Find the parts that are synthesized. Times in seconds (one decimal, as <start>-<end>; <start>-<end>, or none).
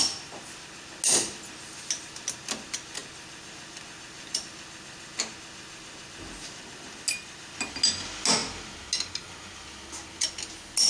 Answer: none